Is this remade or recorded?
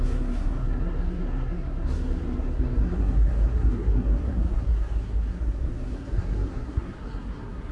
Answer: remade